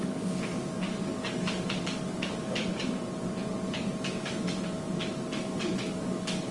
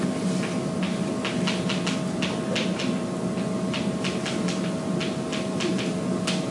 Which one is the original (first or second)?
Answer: second